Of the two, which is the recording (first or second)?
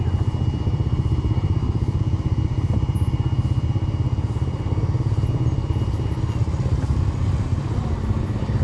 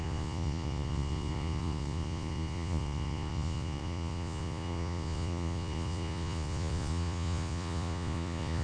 first